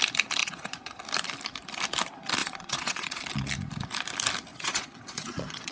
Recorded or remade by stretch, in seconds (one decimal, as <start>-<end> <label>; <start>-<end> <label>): 0.0-0.4 recorded; 0.4-1.0 remade; 1.0-2.4 recorded; 2.4-3.2 remade; 3.2-4.5 recorded; 4.5-5.7 remade